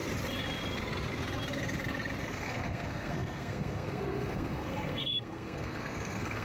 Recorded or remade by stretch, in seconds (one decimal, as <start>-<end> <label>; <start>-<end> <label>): 0.0-2.2 recorded; 2.2-6.4 remade